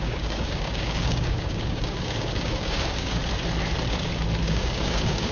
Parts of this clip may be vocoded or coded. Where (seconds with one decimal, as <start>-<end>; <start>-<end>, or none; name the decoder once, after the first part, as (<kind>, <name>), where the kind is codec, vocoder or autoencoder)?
0.0-3.2 (codec, DAC); 4.4-5.3

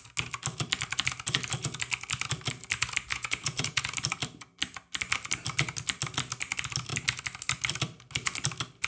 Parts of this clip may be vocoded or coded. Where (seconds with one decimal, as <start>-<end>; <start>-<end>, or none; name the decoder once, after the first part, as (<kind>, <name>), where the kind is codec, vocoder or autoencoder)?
3.1-3.8 (vocoder, Vocos)

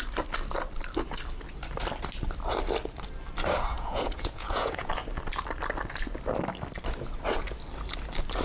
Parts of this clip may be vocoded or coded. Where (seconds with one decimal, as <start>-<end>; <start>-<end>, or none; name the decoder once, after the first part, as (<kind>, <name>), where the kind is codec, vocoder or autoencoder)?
3.7-4.9 (vocoder, Vocos)

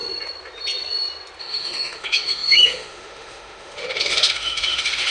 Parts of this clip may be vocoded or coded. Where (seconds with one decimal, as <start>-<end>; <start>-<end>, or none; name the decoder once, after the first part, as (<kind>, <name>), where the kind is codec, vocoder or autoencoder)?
1.4-5.1 (autoencoder, DAC-VAE)